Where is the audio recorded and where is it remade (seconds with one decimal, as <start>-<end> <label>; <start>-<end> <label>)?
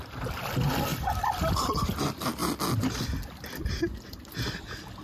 0.0-5.0 recorded